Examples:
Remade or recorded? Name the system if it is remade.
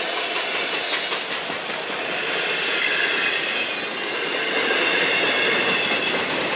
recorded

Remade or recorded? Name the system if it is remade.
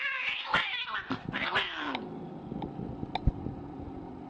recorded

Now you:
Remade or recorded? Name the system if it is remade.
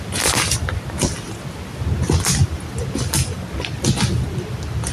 recorded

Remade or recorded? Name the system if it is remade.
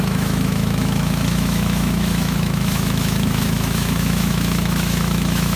remade, autoencoder, DAC-VAE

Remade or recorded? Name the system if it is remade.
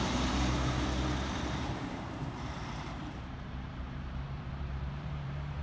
remade, vocoder, BigVGAN v2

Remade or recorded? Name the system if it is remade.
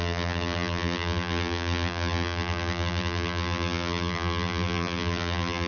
remade, vocoder, BigVGAN v2